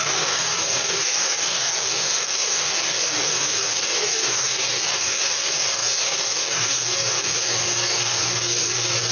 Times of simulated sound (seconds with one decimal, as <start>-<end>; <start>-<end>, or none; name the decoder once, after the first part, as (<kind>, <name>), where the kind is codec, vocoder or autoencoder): 0.0-9.1 (codec, DAC)